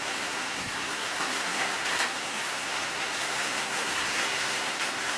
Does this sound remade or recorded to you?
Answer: remade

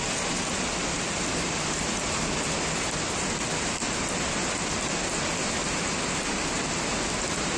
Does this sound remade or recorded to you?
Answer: recorded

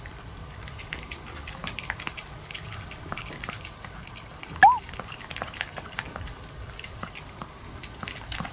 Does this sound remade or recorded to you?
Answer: remade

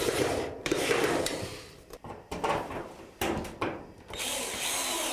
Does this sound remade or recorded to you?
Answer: remade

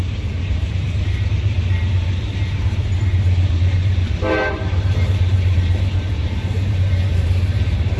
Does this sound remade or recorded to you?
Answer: remade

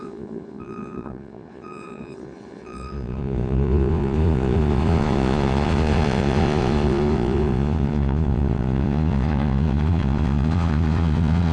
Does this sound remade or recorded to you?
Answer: remade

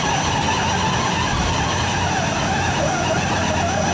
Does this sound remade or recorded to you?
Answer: recorded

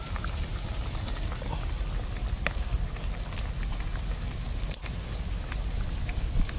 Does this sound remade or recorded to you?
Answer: recorded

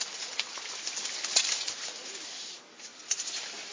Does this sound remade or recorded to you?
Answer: recorded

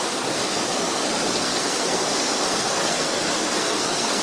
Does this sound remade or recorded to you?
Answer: remade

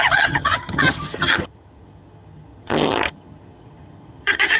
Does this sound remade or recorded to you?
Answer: remade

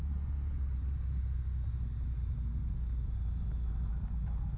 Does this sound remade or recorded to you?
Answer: recorded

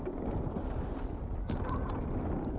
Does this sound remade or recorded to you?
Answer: recorded